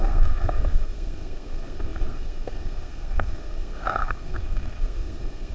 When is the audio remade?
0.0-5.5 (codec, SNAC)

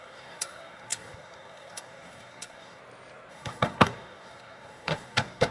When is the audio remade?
0.0-2.8 (codec, SNAC); 3.3-5.5